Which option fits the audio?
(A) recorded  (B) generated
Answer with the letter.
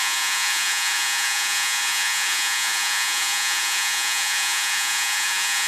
B